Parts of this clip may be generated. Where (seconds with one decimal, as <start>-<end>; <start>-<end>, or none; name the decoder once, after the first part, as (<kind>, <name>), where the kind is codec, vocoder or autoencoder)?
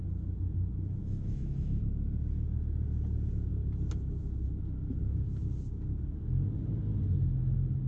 1.0-1.8 (autoencoder, DAC-VAE)